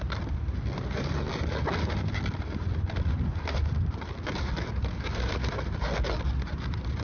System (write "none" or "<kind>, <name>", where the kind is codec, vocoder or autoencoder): vocoder, BigVGAN v2